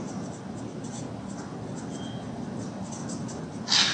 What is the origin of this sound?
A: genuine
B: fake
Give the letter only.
A